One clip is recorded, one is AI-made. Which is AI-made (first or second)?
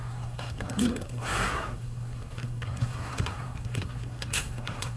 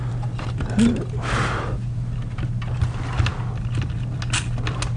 first